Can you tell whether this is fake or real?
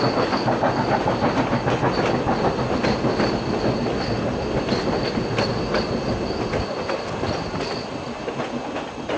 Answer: real